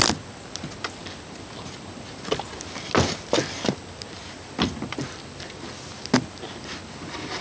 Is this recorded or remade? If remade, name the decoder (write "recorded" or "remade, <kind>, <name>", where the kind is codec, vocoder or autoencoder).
recorded